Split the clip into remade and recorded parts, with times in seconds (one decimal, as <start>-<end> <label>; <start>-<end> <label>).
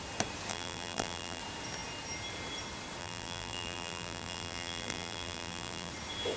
0.0-0.5 recorded; 0.5-1.4 remade; 1.4-3.0 recorded; 3.0-5.9 remade; 5.9-6.4 recorded